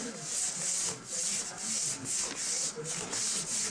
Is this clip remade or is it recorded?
recorded